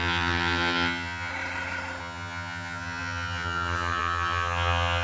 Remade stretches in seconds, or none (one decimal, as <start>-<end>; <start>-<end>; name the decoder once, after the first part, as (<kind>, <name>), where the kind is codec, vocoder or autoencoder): 0.0-1.3 (vocoder, HiFi-GAN); 2.0-5.0